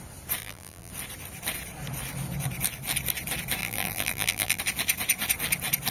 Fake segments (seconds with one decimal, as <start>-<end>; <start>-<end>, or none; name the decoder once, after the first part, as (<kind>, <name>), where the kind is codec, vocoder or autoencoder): 0.4-0.9 (vocoder, BigVGAN v2); 3.6-4.6